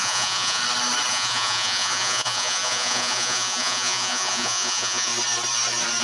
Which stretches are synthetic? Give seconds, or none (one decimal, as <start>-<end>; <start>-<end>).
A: 0.0-0.6; 1.1-5.1